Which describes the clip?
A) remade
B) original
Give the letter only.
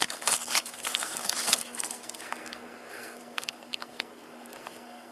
A